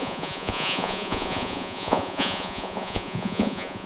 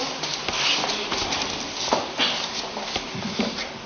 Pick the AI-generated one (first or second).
first